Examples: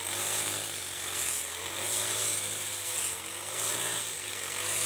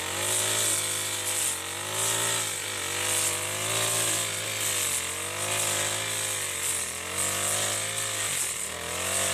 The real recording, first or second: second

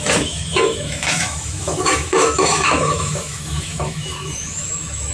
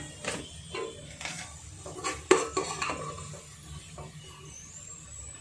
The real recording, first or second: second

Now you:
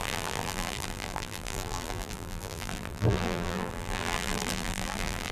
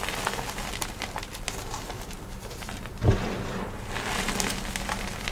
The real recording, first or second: second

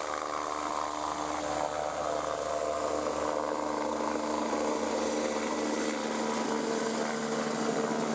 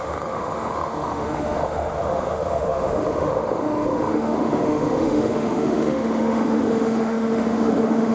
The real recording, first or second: first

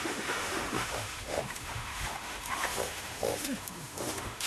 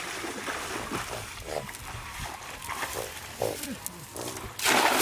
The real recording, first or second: second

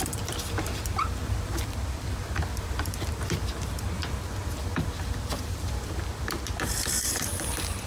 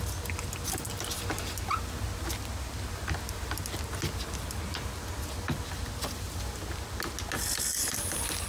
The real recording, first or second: second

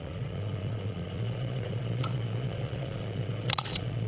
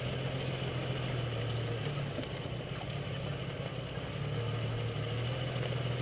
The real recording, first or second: second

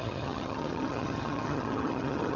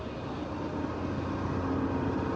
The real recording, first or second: second